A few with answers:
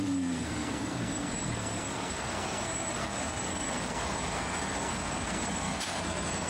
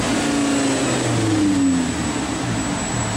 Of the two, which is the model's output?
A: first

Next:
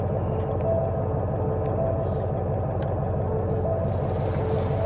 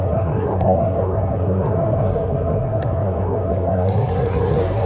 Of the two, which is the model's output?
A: second